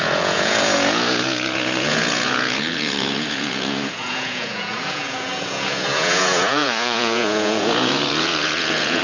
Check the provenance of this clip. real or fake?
fake